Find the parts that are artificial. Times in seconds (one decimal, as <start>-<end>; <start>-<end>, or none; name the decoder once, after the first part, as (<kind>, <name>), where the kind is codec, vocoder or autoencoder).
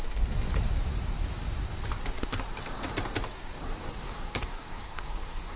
3.8-5.6 (codec, SNAC)